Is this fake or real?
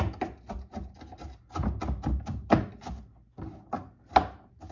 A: real